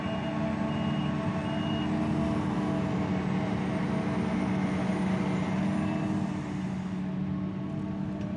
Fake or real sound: real